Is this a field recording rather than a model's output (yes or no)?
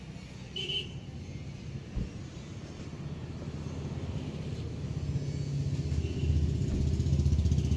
yes